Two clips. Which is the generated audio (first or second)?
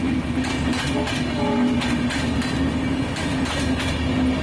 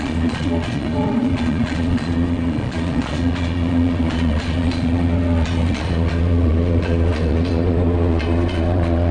second